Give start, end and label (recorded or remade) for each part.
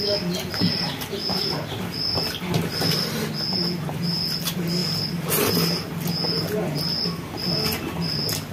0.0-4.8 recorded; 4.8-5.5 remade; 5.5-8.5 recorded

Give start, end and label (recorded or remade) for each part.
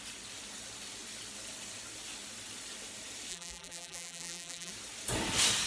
0.0-3.3 recorded; 3.3-4.7 remade; 4.7-5.7 recorded